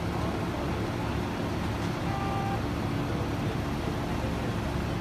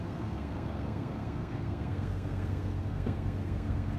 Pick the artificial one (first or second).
second